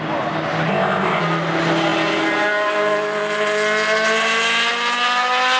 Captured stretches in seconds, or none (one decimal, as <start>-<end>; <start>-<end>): 0.0-0.7; 1.2-5.6